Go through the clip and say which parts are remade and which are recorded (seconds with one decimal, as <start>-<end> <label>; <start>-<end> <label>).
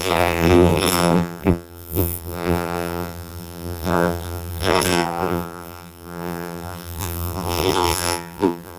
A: 0.0-8.8 remade